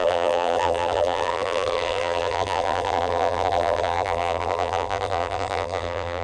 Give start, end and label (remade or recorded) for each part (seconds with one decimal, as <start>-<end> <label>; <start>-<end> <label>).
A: 0.0-6.2 remade